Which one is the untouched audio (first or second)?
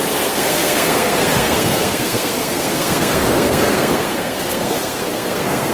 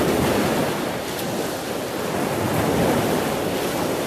second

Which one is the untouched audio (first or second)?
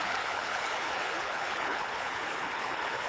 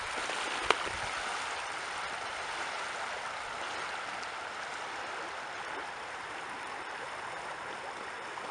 second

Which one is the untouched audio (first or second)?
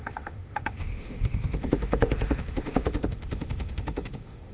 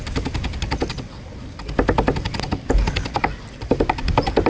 second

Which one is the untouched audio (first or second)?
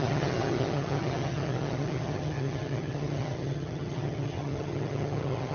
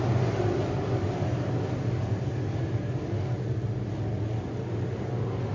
second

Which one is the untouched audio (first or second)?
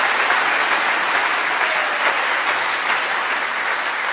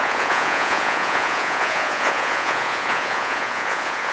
first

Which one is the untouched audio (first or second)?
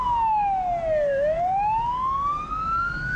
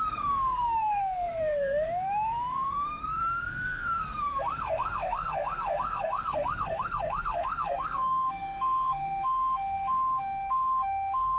first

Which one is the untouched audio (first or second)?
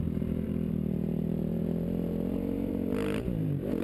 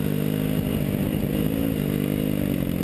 second